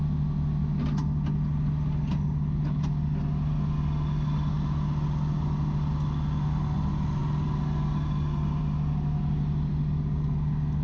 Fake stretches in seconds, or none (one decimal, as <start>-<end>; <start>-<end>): none